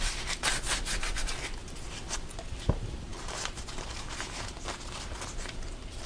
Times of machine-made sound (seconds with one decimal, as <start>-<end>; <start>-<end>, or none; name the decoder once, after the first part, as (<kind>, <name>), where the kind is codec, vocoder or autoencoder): 3.1-6.1 (vocoder, BigVGAN v2)